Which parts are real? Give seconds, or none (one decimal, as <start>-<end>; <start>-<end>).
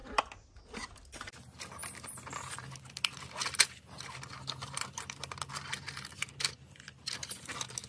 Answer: 0.0-7.9